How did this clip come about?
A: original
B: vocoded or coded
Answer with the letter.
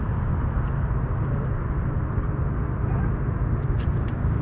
A